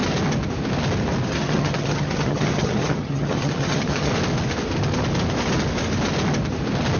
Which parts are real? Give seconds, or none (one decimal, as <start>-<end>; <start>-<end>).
0.0-1.3; 4.1-7.0